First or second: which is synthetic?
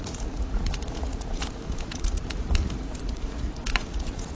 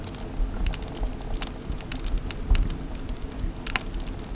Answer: first